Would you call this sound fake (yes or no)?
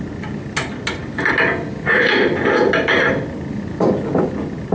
no